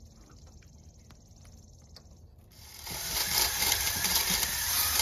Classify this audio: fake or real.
real